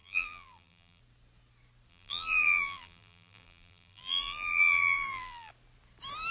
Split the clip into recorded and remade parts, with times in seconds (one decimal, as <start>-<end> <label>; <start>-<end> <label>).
0.0-1.0 remade; 1.0-1.9 recorded; 1.9-5.5 remade; 5.5-6.3 recorded